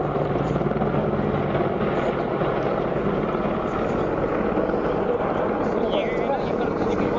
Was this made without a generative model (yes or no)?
yes